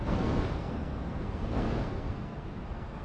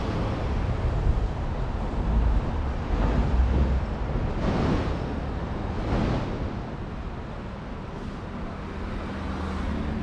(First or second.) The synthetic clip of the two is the first